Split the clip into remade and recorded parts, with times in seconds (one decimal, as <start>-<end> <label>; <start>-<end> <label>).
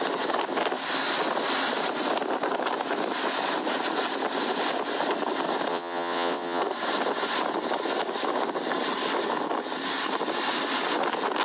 0.0-5.7 recorded; 5.7-6.6 remade; 6.6-11.4 recorded